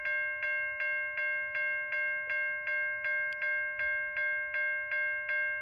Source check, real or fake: real